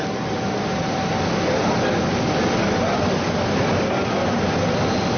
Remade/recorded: recorded